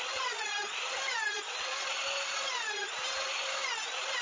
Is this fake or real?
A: real